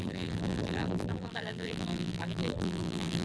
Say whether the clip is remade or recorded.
remade